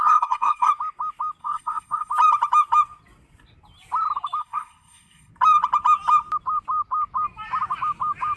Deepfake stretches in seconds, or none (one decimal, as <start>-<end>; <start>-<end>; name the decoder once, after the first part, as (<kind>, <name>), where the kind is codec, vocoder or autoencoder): 0.0-0.7 (codec, SNAC); 1.4-2.1; 4.4-5.3